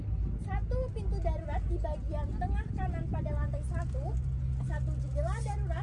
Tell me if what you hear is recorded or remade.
recorded